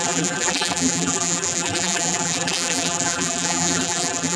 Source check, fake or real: fake